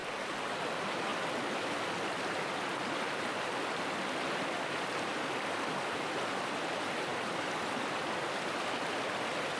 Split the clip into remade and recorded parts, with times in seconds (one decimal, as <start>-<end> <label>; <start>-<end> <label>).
0.0-9.6 recorded